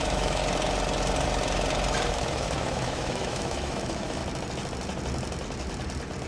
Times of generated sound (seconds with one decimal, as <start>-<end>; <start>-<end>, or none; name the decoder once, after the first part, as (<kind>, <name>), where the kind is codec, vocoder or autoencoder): 0.0-0.4 (autoencoder, DAC-VAE); 2.1-4.2